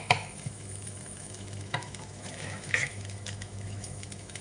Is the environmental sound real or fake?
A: fake